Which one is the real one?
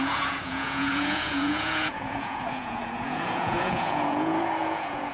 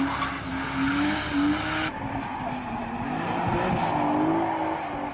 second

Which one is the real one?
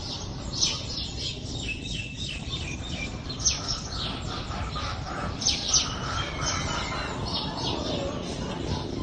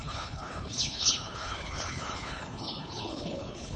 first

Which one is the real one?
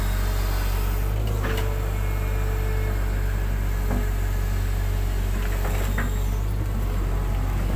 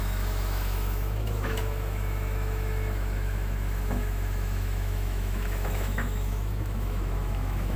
first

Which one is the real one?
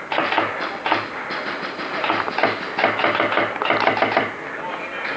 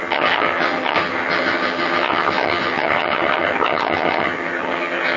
first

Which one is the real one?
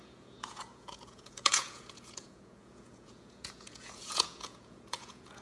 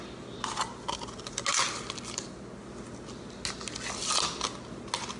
second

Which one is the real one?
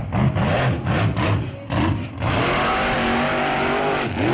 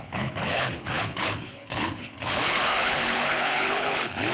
first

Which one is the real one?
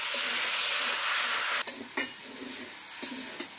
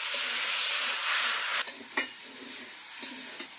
first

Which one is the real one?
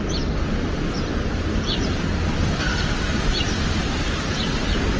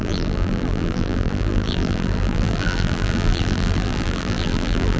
first